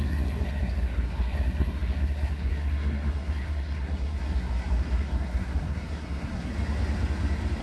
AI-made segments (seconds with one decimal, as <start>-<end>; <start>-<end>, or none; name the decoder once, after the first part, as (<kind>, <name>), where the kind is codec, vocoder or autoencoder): 0.0-6.5 (codec, SNAC)